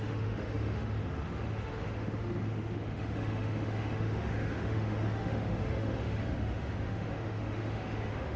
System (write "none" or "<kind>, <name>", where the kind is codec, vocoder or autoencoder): autoencoder, DAC-VAE